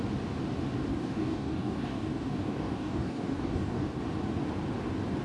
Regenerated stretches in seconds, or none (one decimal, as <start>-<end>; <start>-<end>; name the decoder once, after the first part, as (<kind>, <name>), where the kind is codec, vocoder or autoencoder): 0.9-4.0 (codec, DAC)